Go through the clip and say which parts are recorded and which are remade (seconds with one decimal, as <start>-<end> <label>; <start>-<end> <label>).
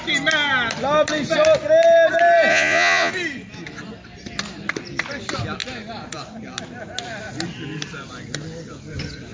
0.0-2.5 recorded; 2.5-3.1 remade; 3.1-9.3 recorded